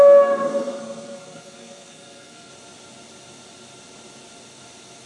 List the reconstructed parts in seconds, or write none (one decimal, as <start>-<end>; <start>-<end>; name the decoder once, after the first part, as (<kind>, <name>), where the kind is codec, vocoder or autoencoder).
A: 0.5-2.5 (codec, SNAC)